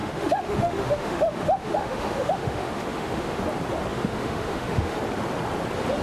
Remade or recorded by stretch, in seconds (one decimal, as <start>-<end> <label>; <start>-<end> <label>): 0.0-3.4 remade; 3.4-3.9 recorded; 3.9-5.0 remade; 5.0-6.0 recorded